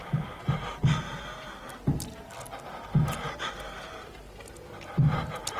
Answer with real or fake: real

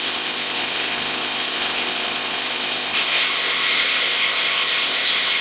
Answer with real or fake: fake